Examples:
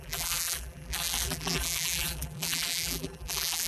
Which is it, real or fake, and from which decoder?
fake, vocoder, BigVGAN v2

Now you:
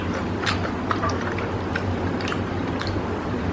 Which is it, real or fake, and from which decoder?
real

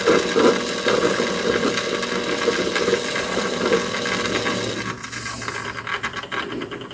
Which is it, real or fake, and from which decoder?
real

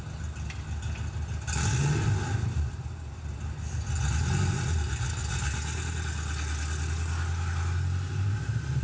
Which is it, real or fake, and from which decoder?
real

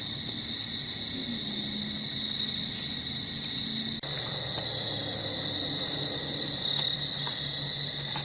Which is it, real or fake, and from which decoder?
real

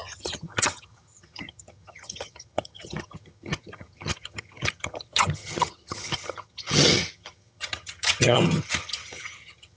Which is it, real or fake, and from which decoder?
fake, vocoder, HiFi-GAN